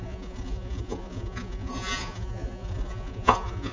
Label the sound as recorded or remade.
remade